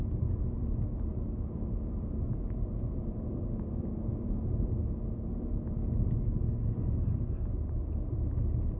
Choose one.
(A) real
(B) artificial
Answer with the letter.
A